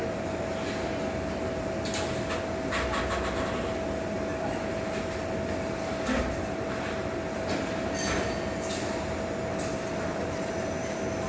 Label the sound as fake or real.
real